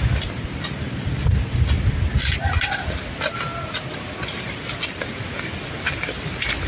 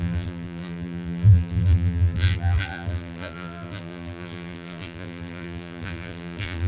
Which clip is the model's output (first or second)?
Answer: second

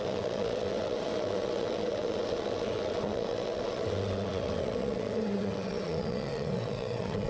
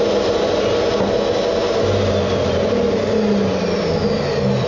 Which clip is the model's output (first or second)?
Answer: first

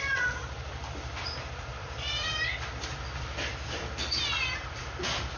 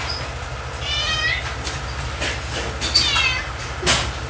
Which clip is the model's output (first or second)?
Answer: first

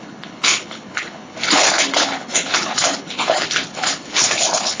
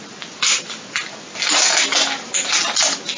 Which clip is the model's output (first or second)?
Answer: first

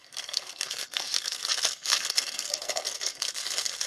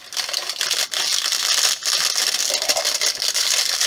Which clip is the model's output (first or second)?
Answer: first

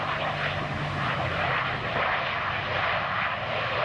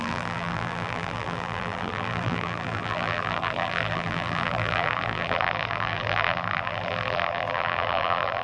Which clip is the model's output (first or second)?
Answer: second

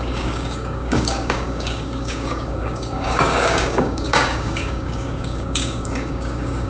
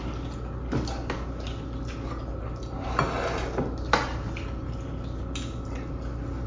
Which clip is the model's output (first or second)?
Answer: first